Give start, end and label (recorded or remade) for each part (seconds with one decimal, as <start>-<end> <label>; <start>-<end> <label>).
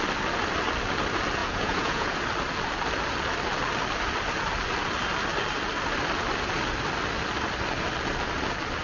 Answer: 0.0-1.4 recorded; 1.4-2.2 remade; 2.2-8.8 recorded